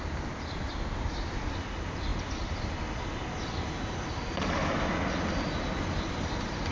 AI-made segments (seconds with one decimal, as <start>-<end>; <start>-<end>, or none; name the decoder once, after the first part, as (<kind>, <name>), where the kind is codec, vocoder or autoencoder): none